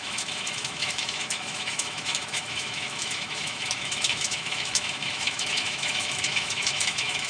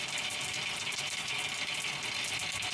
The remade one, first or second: first